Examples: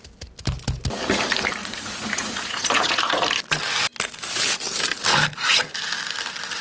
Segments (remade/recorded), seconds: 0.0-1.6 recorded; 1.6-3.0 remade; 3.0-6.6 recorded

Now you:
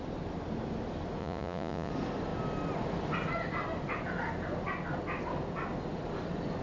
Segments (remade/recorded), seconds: 0.0-1.2 recorded; 1.2-1.9 remade; 1.9-6.6 recorded

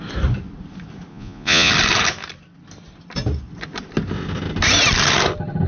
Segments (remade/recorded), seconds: 0.0-1.1 recorded; 1.1-1.7 remade; 1.7-5.7 recorded

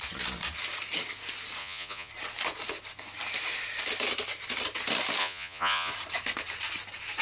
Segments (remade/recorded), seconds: 0.0-1.6 recorded; 1.6-2.1 remade; 2.1-5.2 recorded; 5.2-5.9 remade; 5.9-7.2 recorded

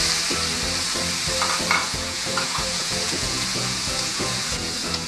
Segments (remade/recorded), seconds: 0.0-1.8 recorded; 1.8-5.1 remade

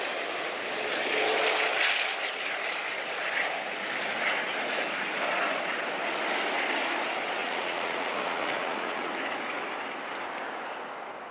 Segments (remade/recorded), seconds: 0.0-7.4 recorded; 7.4-9.1 remade; 9.1-11.3 recorded